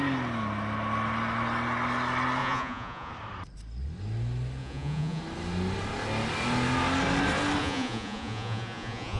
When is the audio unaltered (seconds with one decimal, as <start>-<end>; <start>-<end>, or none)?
0.0-2.4; 3.1-4.6; 5.2-7.6